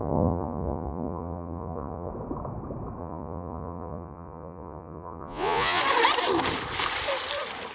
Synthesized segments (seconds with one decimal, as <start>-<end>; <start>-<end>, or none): 0.0-2.1; 3.0-5.8